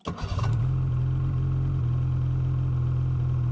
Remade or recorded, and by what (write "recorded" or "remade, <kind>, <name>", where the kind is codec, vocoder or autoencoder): recorded